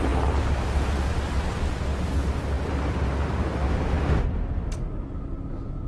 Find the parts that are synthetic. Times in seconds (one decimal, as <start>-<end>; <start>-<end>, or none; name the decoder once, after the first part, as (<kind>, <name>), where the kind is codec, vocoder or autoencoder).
none